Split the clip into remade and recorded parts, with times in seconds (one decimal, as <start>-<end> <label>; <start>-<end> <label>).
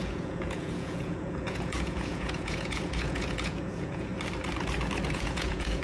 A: 0.0-4.1 remade; 4.1-5.1 recorded; 5.1-5.8 remade